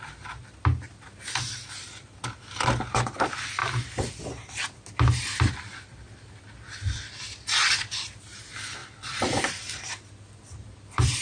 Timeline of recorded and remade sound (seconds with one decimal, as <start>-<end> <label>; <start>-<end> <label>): 0.0-8.8 recorded; 8.8-9.7 remade; 9.7-11.2 recorded